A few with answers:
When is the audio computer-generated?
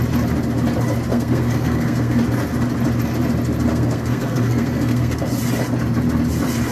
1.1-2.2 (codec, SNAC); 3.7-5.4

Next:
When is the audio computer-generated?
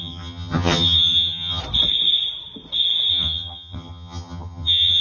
0.0-1.6 (vocoder, HiFi-GAN); 3.1-5.0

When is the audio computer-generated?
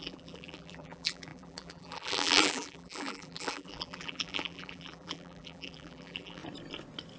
0.0-6.4 (vocoder, BigVGAN v2)